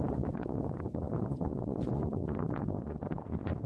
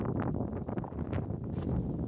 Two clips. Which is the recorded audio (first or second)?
second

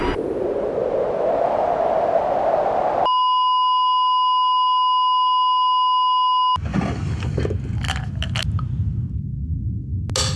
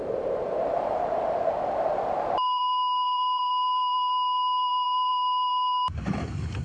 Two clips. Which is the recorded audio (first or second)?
first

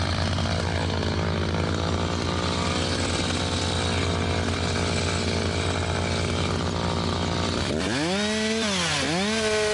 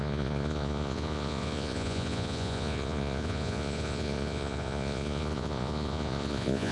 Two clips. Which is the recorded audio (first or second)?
first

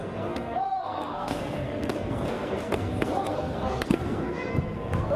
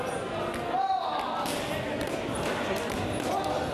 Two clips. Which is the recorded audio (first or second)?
second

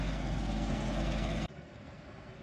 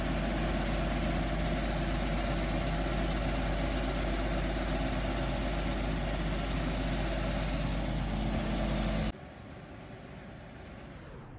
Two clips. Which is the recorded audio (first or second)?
second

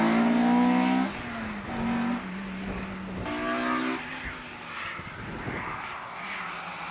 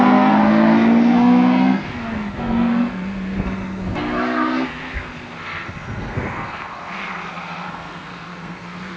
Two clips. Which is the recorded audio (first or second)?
first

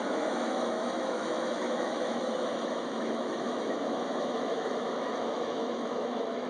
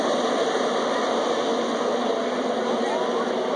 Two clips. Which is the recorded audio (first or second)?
second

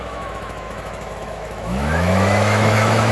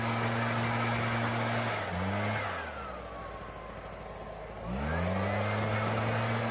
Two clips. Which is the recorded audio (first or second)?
second